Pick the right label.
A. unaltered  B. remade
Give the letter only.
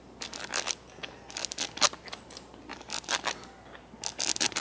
A